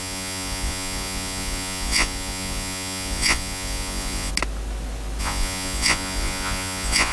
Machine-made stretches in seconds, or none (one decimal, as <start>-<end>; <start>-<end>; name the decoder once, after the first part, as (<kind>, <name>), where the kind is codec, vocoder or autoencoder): 0.0-4.3 (vocoder, Vocos); 5.2-7.1